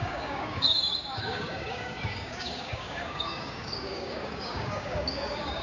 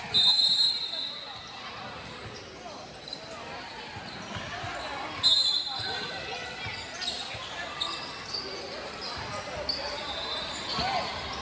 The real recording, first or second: second